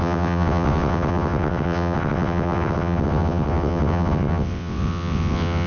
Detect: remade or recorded remade